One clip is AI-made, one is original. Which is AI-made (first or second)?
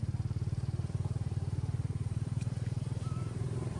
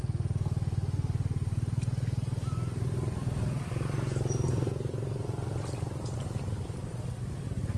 first